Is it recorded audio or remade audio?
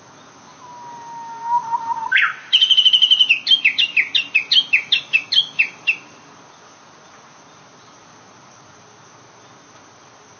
recorded